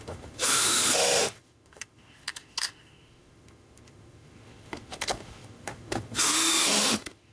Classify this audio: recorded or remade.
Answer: remade